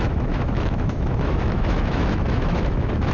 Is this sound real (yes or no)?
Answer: no